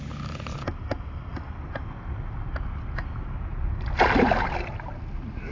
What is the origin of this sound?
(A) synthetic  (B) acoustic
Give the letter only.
B